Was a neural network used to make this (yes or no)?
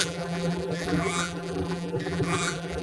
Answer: yes